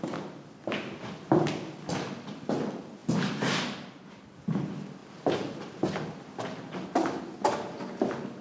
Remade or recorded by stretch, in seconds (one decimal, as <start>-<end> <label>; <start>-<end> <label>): 0.0-8.4 recorded